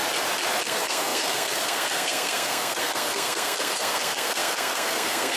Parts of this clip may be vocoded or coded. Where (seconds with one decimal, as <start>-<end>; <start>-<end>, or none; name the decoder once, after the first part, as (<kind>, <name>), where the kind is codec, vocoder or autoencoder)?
0.6-5.4 (codec, SNAC)

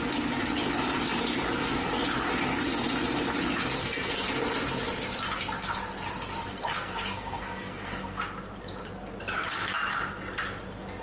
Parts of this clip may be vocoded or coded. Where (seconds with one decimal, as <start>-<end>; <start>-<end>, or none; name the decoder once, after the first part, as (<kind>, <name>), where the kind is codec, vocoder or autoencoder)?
3.8-4.3 (codec, SNAC); 6.5-8.2

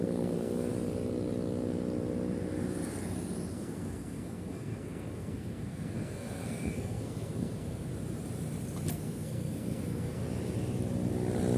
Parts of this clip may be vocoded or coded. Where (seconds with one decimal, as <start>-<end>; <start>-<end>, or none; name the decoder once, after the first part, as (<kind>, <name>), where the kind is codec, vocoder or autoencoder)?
0.0-0.7 (codec, SNAC); 3.5-7.9; 8.9-10.2

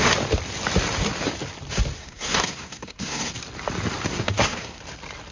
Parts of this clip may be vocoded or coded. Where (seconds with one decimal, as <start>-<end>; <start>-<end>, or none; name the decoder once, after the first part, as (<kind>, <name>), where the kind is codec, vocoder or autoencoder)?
2.0-3.3 (codec, SNAC); 4.1-4.8

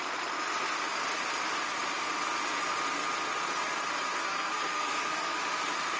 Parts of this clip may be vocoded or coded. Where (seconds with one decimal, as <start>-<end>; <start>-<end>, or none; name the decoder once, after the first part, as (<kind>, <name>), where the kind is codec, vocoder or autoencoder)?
4.2-5.4 (codec, SNAC)